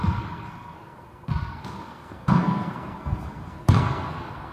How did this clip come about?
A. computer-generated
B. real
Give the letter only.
A